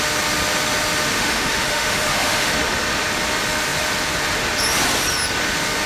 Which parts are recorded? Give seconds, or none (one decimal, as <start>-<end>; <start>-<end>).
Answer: 0.0-1.1; 2.5-5.9